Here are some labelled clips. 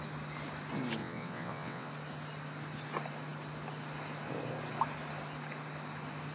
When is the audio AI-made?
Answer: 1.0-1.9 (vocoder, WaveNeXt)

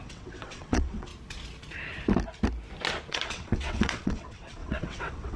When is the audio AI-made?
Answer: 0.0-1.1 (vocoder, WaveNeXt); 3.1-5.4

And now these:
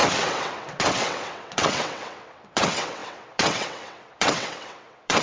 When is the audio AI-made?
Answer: 0.0-5.2 (vocoder, WaveNeXt)